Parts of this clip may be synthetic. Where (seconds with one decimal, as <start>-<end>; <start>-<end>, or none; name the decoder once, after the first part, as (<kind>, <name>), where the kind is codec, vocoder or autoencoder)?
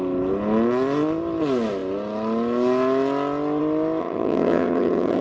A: 4.0-5.2 (vocoder, HiFi-GAN)